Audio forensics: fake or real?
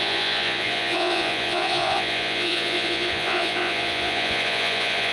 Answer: fake